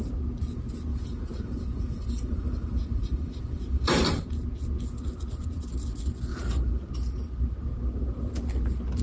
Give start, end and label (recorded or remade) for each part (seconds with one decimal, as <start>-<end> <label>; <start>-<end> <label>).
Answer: 0.0-0.9 recorded; 0.9-4.3 remade; 4.3-6.3 recorded; 6.3-6.9 remade; 6.9-9.0 recorded